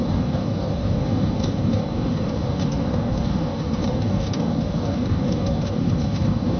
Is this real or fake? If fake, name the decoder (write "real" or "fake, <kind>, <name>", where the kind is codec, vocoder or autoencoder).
fake, codec, DAC